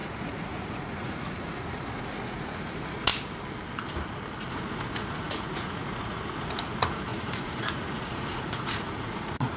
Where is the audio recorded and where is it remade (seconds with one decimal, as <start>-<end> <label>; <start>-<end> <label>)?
0.0-3.1 remade; 3.1-4.5 recorded; 4.5-9.6 remade